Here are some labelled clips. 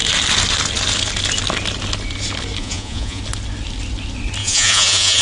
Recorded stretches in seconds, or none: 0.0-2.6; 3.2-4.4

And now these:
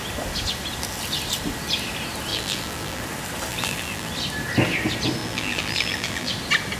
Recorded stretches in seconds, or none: 0.0-2.3; 3.0-3.5; 4.1-5.2; 6.3-6.8

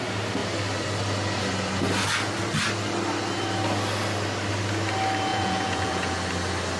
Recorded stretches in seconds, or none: 0.0-5.3; 6.2-6.8

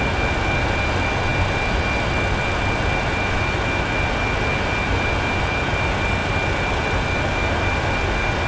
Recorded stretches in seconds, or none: 0.0-8.5

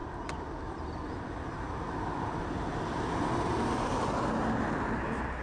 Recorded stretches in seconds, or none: 0.0-5.4

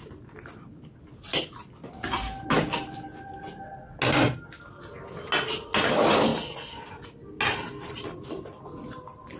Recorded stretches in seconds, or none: 0.0-9.4